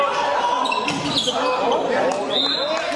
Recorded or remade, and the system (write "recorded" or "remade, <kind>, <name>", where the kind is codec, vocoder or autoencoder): recorded